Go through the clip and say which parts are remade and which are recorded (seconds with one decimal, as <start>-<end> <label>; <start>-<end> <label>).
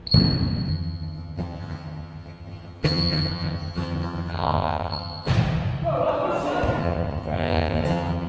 0.0-0.7 recorded; 0.7-5.3 remade; 5.3-6.8 recorded; 6.8-8.3 remade